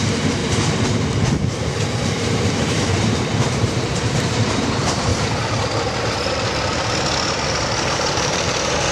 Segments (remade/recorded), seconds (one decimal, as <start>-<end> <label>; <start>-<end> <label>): 0.0-5.1 remade; 5.1-7.9 recorded; 7.9-8.9 remade